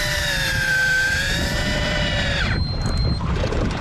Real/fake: fake